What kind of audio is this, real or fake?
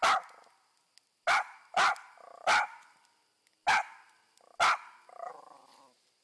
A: real